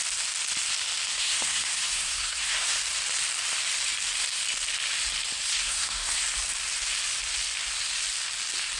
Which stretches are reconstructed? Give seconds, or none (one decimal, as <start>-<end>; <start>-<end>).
1.1-2.8; 5.5-6.2